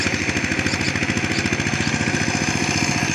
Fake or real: real